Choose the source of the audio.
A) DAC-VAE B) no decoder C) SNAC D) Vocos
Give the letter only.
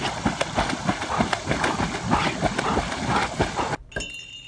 B